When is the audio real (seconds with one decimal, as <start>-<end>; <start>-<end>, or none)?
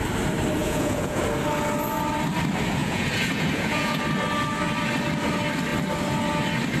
0.0-0.6; 1.2-2.8; 4.0-6.8